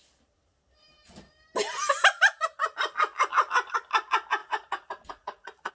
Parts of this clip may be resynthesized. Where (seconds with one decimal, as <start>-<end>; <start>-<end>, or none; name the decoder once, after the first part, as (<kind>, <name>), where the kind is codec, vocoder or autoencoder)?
4.4-5.7 (vocoder, Vocos)